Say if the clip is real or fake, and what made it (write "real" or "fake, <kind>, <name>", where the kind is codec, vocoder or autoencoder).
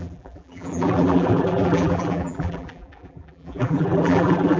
fake, vocoder, BigVGAN v2